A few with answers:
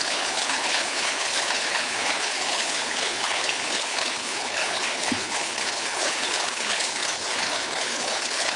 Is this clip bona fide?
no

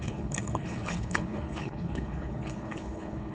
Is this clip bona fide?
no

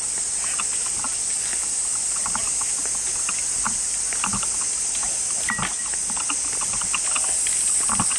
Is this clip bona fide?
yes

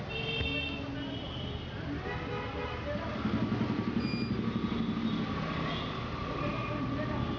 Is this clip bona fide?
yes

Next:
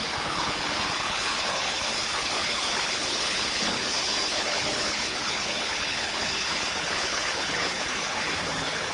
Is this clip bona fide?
no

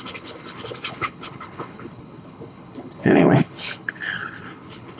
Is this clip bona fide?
no